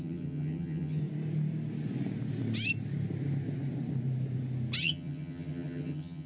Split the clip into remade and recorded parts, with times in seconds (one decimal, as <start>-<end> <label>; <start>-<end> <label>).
0.0-1.0 remade; 1.0-4.8 recorded; 4.8-6.3 remade